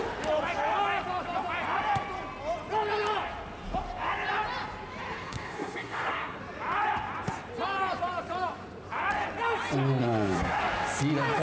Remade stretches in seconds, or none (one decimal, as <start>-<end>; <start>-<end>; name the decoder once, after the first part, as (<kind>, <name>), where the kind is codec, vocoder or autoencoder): 5.2-6.4 (codec, SNAC); 10.0-10.6